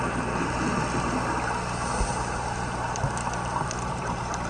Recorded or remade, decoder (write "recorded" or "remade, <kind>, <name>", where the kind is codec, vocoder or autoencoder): remade, vocoder, BigVGAN v2